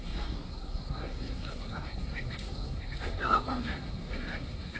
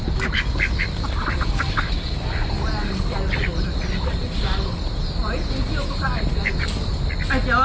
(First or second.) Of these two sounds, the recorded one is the second